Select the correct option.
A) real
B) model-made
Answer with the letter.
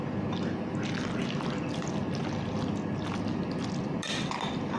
A